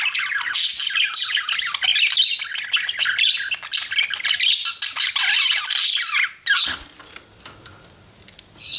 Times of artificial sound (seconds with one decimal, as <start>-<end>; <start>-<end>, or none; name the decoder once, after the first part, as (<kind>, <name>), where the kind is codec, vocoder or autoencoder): none